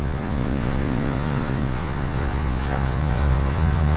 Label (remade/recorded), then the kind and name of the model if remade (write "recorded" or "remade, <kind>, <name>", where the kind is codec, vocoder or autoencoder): remade, vocoder, Vocos